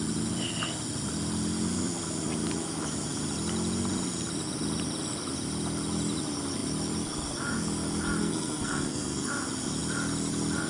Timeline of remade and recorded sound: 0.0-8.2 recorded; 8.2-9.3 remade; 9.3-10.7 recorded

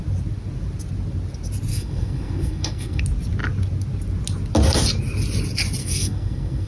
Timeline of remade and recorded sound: 0.0-1.7 recorded; 1.7-3.0 remade; 3.0-5.8 recorded; 5.8-6.7 remade

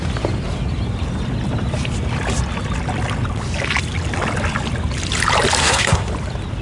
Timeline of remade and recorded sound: 0.0-5.6 recorded; 5.6-6.1 remade; 6.1-6.6 recorded

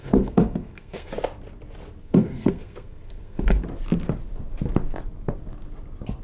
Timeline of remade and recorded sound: 0.0-1.1 remade; 1.1-2.0 recorded; 2.0-3.6 remade; 3.6-6.2 recorded

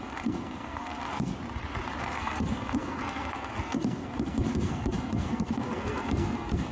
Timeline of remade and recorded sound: 0.0-1.3 remade; 1.3-2.0 recorded; 2.0-6.7 remade

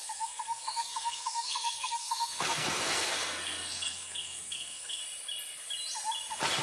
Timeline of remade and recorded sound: 0.0-5.0 remade; 5.0-6.6 recorded

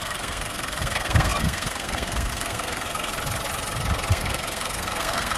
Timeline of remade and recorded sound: 0.0-3.1 remade; 3.1-4.1 recorded; 4.1-5.4 remade

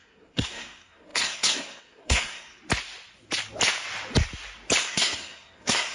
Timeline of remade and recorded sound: 0.0-2.6 remade; 2.6-4.8 recorded; 4.8-5.9 remade